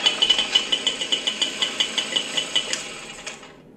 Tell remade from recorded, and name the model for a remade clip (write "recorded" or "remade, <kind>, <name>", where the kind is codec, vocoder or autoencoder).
recorded